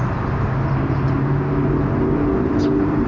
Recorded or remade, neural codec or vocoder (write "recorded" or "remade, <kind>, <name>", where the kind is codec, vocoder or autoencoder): recorded